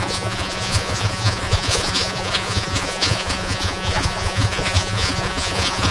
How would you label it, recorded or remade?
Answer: remade